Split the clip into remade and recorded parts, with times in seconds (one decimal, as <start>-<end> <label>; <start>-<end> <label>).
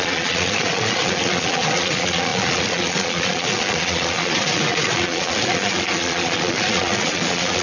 0.0-7.6 remade